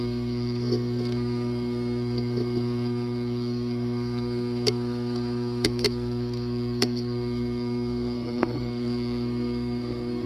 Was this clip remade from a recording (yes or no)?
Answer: yes